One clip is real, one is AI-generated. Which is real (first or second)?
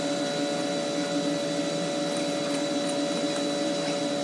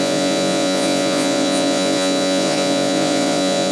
first